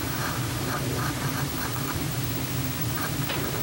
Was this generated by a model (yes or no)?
yes